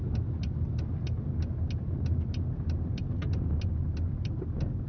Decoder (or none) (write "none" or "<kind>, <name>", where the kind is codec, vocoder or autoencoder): none